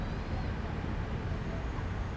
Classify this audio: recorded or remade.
recorded